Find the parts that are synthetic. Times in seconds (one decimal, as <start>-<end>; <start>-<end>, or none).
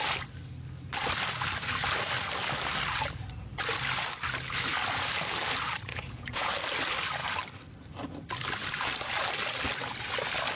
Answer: 5.9-6.5